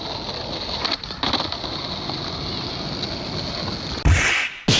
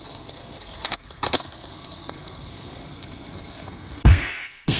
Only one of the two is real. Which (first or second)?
first